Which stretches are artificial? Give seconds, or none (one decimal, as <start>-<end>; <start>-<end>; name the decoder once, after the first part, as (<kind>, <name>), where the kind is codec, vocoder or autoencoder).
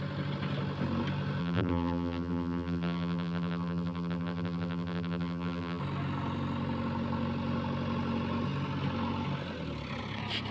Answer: 1.4-5.8 (vocoder, BigVGAN v2)